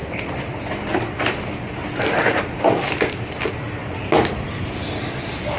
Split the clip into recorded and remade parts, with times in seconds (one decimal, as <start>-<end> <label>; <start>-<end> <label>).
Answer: 0.0-5.6 recorded